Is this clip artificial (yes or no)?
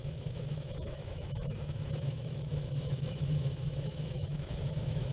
yes